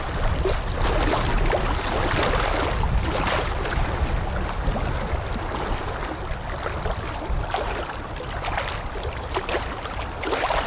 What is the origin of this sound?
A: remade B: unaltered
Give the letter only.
B